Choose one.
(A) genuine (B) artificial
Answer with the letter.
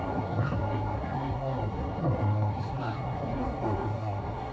B